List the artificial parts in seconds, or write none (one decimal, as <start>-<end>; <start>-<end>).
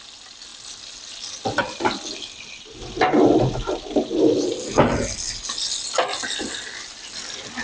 none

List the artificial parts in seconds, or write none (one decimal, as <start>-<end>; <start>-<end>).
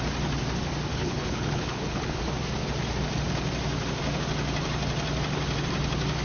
0.9-2.2